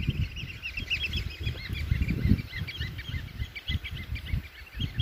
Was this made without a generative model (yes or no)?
yes